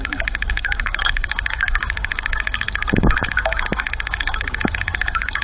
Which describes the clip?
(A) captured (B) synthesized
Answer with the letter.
B